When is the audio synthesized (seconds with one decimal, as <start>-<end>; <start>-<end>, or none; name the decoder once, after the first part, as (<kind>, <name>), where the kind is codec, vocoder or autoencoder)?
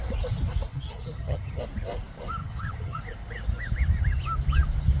0.7-1.6 (vocoder, HiFi-GAN); 2.4-3.0